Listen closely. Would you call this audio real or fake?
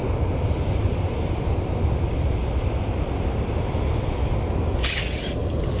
real